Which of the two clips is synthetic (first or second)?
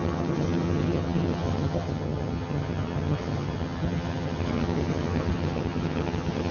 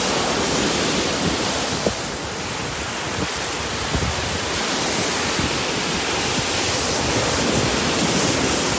first